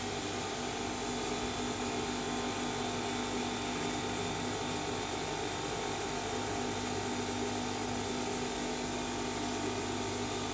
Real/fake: real